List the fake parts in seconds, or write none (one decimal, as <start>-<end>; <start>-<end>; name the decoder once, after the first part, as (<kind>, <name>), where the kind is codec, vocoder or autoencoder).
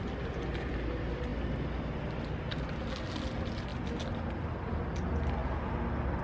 none